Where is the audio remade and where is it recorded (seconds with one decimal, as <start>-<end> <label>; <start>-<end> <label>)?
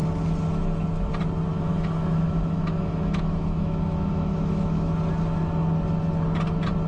0.0-1.5 recorded; 1.5-4.9 remade; 4.9-6.9 recorded